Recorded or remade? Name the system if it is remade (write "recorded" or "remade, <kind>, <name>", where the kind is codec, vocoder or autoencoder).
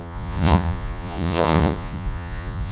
remade, vocoder, Vocos